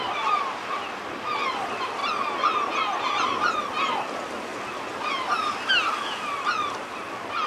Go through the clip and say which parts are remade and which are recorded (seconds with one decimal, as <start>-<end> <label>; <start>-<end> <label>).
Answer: 0.0-7.5 recorded